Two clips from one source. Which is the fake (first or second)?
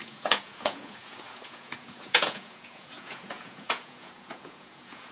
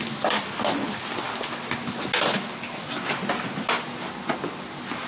first